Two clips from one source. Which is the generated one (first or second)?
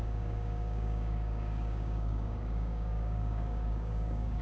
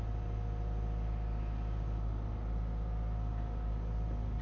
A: first